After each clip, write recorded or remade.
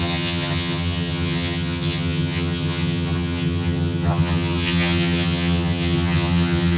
remade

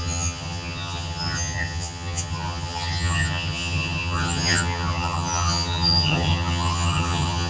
remade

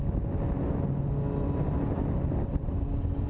recorded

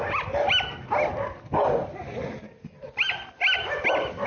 recorded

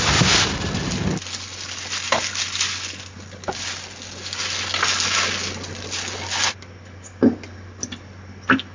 recorded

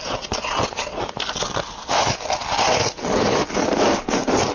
recorded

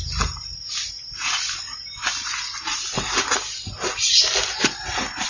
recorded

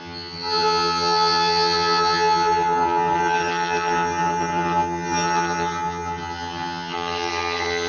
remade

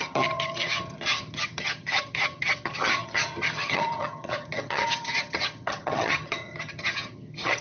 remade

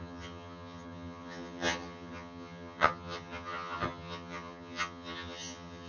remade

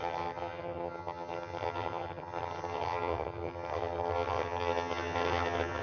remade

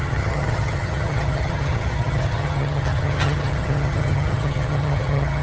remade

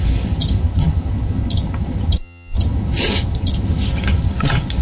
remade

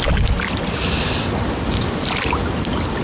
recorded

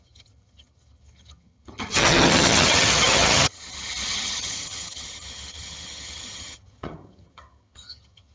remade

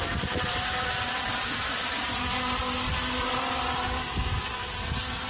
recorded